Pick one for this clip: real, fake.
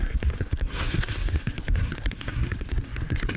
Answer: fake